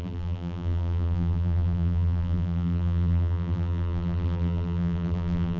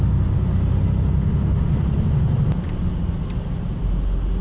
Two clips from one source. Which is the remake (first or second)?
first